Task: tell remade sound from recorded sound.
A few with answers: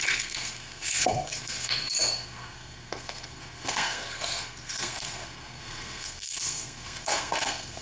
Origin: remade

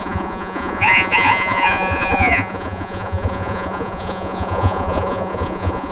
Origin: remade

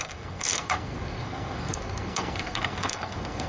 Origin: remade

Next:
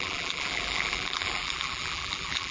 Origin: remade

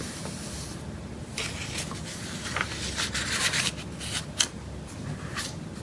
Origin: recorded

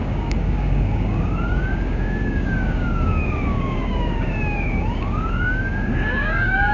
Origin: remade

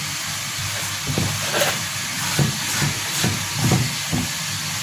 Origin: recorded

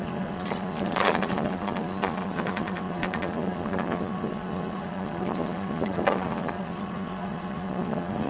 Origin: remade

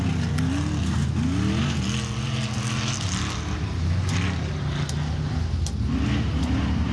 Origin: recorded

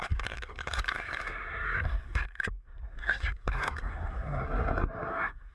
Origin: remade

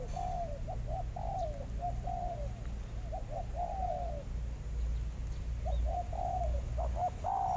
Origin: recorded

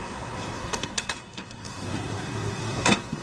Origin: remade